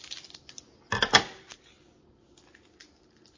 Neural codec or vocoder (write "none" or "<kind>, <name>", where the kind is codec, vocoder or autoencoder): none